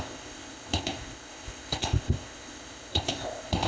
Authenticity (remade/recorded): remade